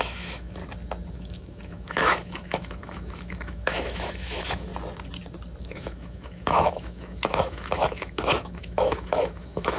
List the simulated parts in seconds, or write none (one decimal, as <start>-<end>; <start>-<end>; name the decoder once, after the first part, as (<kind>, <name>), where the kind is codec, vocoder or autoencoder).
0.0-0.6 (autoencoder, DAC-VAE); 1.1-4.7; 5.6-9.8